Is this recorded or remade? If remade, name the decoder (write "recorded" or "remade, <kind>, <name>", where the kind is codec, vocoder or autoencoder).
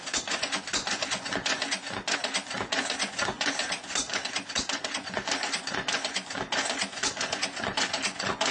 remade, vocoder, Vocos